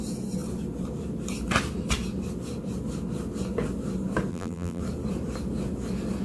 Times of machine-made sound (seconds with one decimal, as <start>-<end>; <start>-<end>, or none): 4.3-4.8